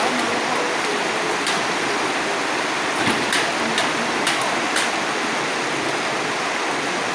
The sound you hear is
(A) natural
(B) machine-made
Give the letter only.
A